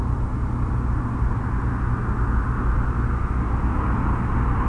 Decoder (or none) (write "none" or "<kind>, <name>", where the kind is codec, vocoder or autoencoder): none